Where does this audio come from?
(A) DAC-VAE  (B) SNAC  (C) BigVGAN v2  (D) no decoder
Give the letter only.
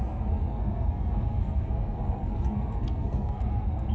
B